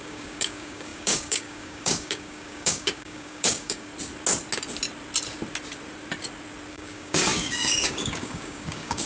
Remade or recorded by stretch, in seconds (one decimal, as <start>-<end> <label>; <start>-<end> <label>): 0.0-3.9 remade; 3.9-6.7 recorded; 6.7-9.1 remade